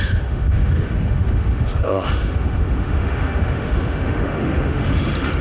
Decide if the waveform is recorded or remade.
remade